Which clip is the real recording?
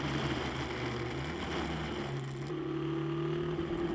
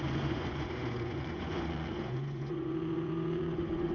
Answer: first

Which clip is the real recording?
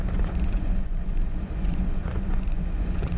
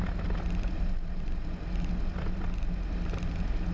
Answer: second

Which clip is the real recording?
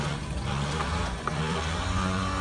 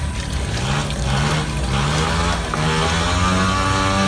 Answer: second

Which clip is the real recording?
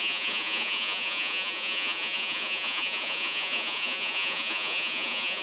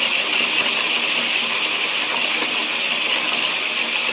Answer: second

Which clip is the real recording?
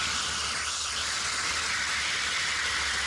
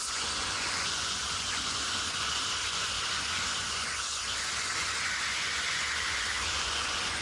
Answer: first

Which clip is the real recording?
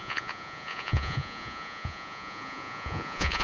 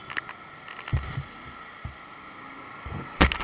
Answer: second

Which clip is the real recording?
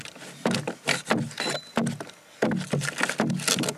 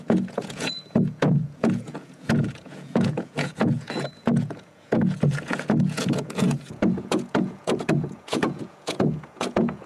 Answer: first